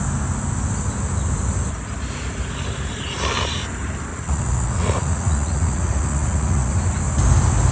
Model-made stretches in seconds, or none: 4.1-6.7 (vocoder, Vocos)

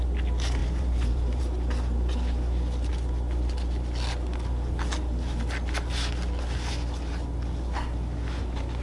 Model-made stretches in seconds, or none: 0.6-1.4 (vocoder, BigVGAN v2)

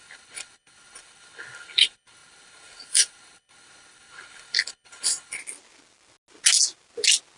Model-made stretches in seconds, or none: 0.0-5.4 (codec, HILCodec)

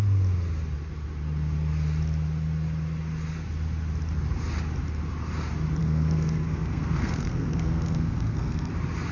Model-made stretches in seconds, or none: 5.8-8.7 (codec, SNAC)

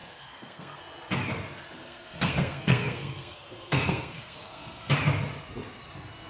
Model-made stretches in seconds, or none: 0.0-0.8 (codec, SNAC); 1.8-4.9